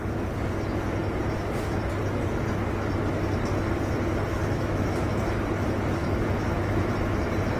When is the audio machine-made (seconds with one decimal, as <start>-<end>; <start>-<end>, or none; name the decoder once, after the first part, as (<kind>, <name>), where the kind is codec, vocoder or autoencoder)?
4.3-5.1 (autoencoder, DAC-VAE); 6.0-6.9

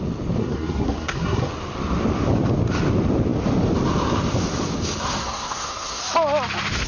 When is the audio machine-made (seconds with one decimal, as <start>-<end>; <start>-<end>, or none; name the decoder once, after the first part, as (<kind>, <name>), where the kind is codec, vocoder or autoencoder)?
0.4-1.5 (codec, SNAC); 5.2-6.0

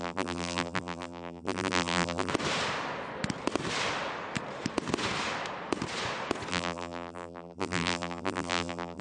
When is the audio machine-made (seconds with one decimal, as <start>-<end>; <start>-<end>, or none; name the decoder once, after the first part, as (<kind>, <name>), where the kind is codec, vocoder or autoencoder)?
0.0-2.3 (vocoder, BigVGAN v2); 6.5-9.0

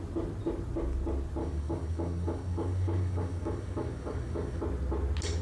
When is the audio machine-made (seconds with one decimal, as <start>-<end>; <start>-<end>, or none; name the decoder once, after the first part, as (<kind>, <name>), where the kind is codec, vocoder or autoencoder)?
1.4-4.6 (codec, DAC)

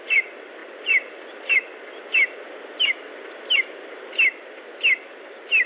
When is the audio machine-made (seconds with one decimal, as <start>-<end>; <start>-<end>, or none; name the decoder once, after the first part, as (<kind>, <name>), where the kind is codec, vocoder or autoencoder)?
0.6-1.2 (vocoder, BigVGAN v2)

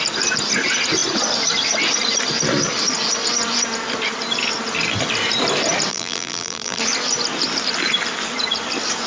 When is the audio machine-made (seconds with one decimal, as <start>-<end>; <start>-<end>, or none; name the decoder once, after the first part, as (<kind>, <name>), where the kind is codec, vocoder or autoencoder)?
5.9-6.8 (vocoder, BigVGAN v2)

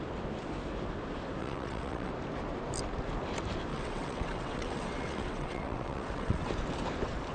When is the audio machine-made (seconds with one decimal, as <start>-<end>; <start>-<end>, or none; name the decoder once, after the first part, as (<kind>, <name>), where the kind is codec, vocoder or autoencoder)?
1.4-2.1 (vocoder, WaveNeXt); 3.7-6.5

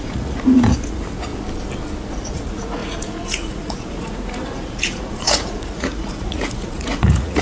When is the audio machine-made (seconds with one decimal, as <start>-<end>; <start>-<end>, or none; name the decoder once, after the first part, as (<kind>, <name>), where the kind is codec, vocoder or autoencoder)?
0.0-1.3 (vocoder, Vocos); 2.1-7.4